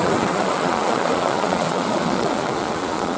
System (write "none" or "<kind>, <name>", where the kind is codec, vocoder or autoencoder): vocoder, Vocos